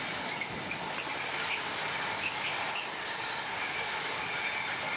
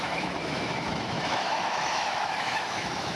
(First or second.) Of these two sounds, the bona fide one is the first